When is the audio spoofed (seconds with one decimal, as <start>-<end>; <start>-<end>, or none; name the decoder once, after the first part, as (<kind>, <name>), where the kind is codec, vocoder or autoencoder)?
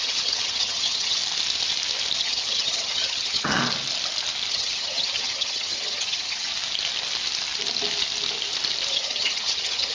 0.0-1.2 (vocoder, HiFi-GAN); 2.2-3.6; 4.5-6.5; 8.9-9.9